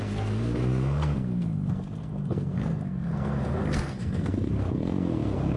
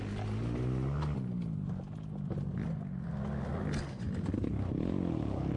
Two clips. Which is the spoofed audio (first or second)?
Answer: first